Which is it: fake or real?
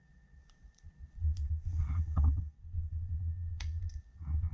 fake